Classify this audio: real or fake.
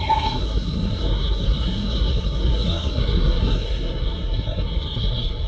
fake